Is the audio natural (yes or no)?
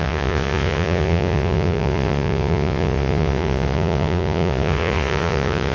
no